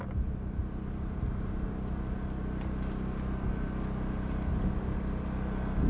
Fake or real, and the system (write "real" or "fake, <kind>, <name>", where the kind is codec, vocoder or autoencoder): real